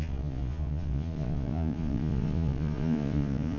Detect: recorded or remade remade